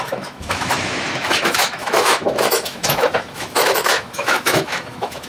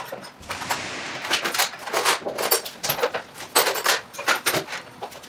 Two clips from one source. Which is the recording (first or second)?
second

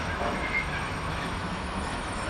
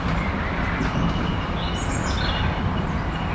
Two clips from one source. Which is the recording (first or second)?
second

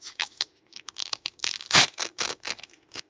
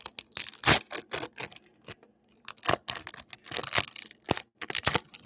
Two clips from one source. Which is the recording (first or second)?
second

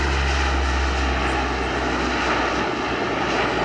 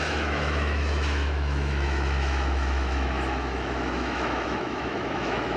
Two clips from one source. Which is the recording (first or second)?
first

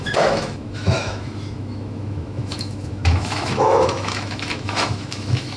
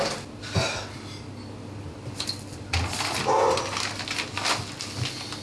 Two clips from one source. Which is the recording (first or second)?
second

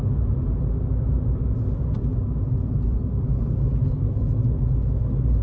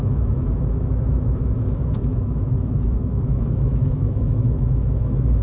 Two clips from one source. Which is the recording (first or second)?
first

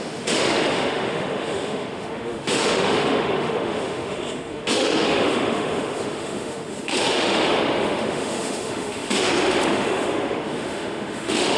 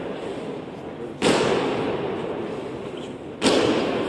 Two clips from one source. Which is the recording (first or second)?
second